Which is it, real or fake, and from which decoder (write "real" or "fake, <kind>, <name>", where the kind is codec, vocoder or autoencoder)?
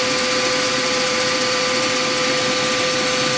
real